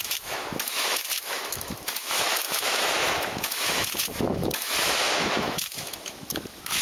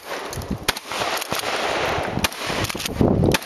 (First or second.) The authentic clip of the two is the second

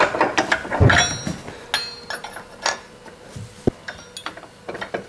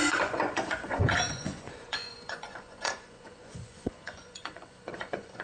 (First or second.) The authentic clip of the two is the first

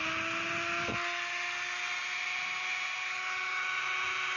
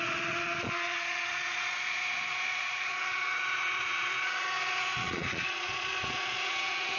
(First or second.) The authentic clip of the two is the first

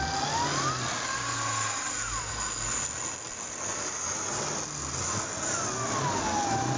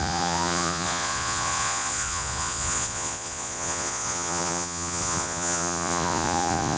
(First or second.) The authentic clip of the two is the first